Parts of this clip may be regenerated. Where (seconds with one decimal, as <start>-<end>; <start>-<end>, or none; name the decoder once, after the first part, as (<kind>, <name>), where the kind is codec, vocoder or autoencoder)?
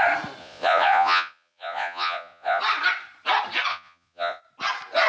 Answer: 0.4-2.6 (vocoder, Vocos); 3.7-4.4